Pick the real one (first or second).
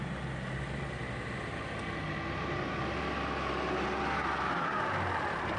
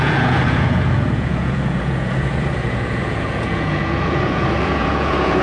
first